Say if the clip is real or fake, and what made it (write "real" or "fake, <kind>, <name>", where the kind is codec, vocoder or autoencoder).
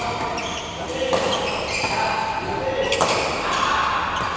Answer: real